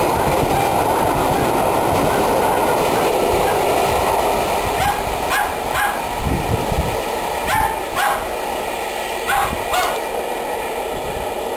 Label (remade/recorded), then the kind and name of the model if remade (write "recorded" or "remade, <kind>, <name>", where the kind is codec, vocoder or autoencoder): recorded